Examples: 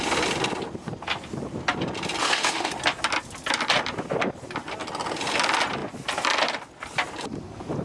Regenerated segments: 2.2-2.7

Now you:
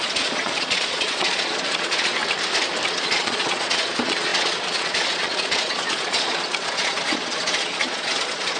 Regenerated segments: 0.0-2.2; 2.9-8.6

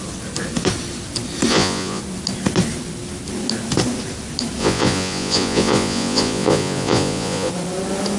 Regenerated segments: 1.5-2.0; 4.6-7.5

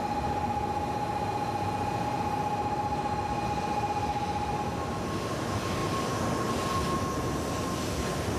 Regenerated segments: none